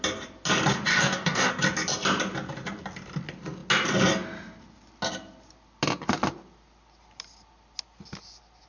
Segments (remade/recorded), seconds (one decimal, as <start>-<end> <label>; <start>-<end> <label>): 0.0-0.9 recorded; 0.9-1.5 remade; 1.5-8.7 recorded